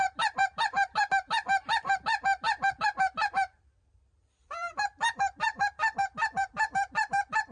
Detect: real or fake fake